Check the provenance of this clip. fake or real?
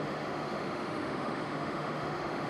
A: fake